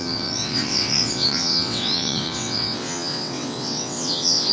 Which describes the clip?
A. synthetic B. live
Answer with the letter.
A